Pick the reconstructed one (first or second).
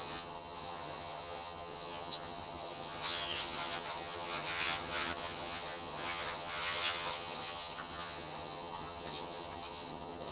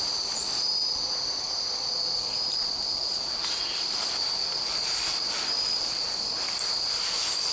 first